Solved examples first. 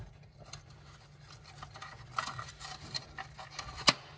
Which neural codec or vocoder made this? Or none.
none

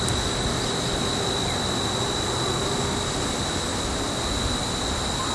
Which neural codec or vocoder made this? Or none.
none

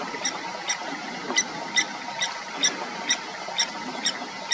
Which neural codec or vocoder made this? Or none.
none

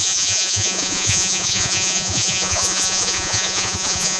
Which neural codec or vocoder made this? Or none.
vocoder, Vocos